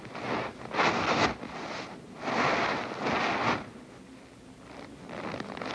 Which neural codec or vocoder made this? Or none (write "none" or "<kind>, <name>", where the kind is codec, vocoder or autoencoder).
none